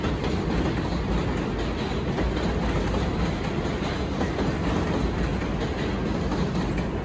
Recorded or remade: recorded